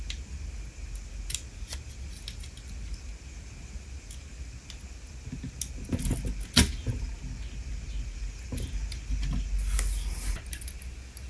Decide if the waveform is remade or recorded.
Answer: recorded